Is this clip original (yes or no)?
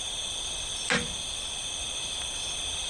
yes